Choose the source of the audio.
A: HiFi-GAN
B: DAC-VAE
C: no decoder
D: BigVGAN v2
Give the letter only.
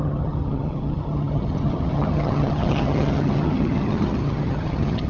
A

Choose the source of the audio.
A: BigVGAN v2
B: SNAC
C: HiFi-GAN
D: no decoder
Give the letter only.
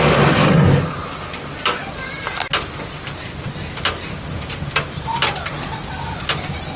D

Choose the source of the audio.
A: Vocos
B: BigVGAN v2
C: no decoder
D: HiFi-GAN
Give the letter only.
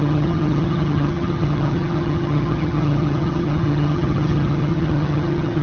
D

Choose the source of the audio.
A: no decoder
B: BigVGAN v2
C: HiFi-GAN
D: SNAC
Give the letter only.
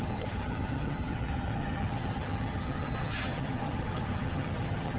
C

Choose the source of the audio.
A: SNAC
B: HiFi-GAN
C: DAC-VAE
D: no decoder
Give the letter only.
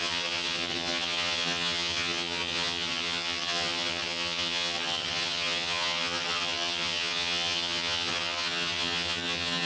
B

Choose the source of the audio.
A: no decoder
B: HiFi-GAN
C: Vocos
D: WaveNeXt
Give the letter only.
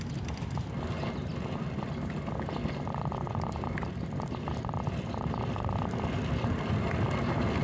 A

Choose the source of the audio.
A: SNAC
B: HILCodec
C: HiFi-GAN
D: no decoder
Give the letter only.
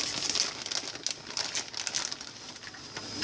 D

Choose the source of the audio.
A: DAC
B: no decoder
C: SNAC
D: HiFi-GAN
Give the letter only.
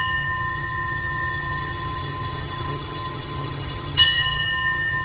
D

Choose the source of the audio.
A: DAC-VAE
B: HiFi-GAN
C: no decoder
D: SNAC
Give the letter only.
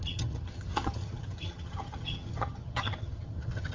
B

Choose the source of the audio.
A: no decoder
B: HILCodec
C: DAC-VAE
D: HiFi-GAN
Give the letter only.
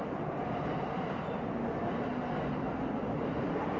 A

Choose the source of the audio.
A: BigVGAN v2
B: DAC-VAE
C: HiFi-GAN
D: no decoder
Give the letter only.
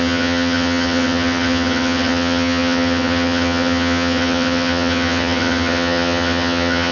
C